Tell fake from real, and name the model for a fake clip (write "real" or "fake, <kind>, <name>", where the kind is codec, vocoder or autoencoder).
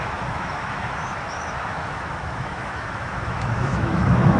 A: fake, autoencoder, DAC-VAE